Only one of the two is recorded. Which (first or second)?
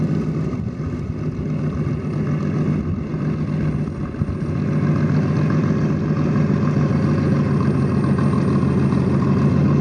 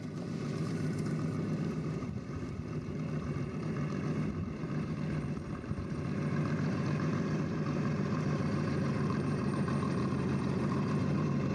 first